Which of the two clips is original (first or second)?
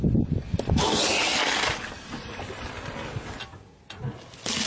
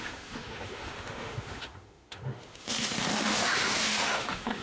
first